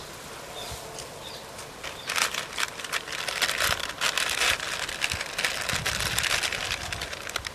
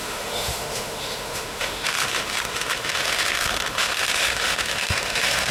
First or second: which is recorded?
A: first